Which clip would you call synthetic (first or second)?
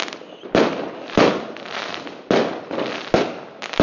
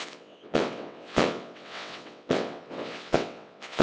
second